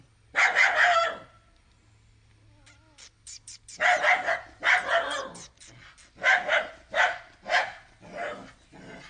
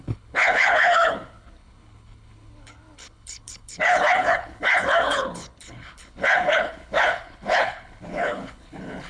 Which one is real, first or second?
first